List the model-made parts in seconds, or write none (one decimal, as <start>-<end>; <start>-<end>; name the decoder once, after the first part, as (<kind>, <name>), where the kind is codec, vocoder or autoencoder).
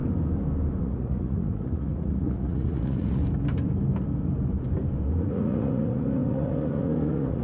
0.8-3.2 (vocoder, Vocos); 5.2-7.4